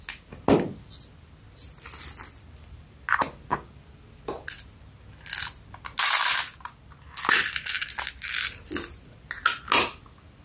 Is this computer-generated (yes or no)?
no